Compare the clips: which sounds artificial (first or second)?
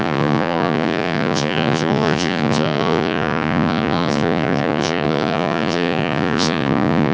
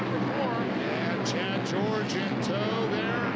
first